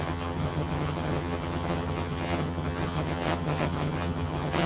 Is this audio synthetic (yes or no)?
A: yes